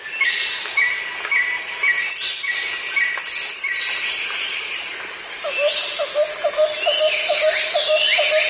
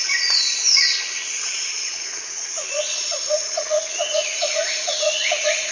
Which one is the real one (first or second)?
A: first